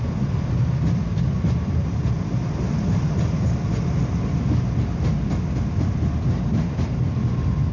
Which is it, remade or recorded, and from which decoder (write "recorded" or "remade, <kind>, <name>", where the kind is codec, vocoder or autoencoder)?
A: recorded